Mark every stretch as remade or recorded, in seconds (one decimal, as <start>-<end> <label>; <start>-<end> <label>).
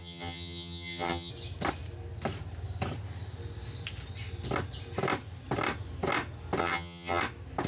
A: 0.0-1.3 remade; 1.3-6.6 recorded; 6.6-7.2 remade; 7.2-7.7 recorded